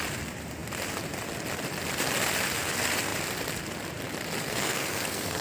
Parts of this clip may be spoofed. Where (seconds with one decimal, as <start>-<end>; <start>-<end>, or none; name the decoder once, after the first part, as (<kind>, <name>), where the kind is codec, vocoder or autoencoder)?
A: 4.4-5.4 (codec, SNAC)